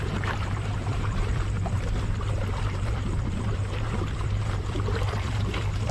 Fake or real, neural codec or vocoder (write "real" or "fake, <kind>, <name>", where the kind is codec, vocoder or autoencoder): fake, vocoder, BigVGAN v2